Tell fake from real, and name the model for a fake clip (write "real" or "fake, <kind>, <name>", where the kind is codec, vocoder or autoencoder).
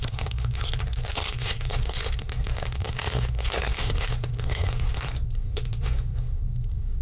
fake, codec, SNAC